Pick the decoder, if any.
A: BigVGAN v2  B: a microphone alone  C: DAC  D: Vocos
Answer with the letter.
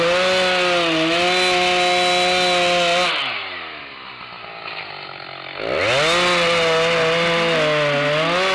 B